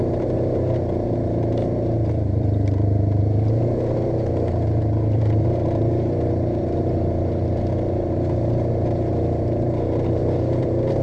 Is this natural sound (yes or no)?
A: no